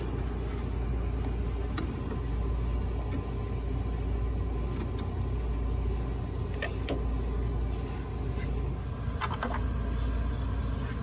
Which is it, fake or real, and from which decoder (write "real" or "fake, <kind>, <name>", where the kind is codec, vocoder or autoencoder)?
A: real